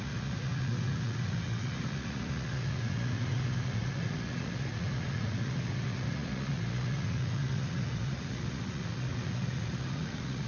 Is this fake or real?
fake